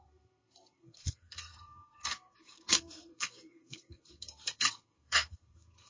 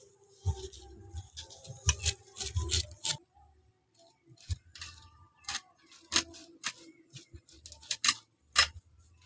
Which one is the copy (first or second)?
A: first